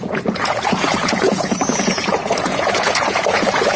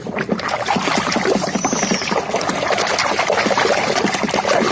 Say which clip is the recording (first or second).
second